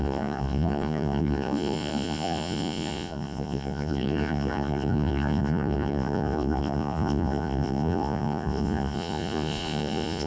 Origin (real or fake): fake